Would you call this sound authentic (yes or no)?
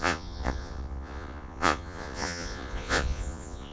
no